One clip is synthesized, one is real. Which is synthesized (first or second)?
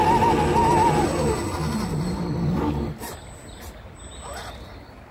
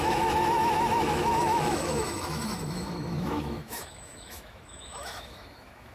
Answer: second